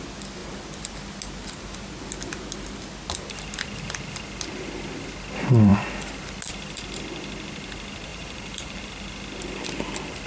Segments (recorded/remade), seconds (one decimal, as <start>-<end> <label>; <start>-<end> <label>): 0.0-8.1 recorded; 8.1-8.8 remade; 8.8-10.3 recorded